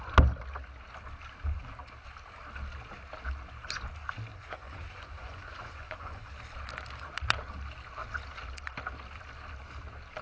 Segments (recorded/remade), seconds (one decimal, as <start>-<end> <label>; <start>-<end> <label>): 0.0-4.3 recorded; 4.3-6.3 remade; 6.3-10.2 recorded

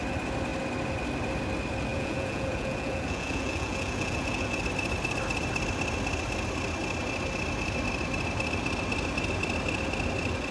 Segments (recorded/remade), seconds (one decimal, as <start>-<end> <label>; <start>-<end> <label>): 0.0-1.9 recorded; 1.9-4.6 remade; 4.6-10.5 recorded

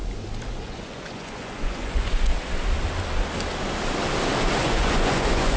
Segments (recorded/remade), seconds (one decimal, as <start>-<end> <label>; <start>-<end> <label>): 0.0-0.5 recorded; 0.5-2.3 remade; 2.3-4.5 recorded; 4.5-5.6 remade